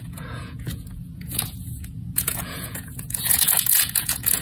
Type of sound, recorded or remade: remade